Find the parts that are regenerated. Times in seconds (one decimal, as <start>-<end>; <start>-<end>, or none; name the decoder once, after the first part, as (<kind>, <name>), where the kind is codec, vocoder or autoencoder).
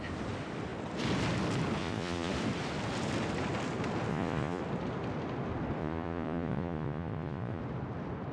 1.8-2.3 (vocoder, Vocos); 4.1-4.6; 5.8-7.6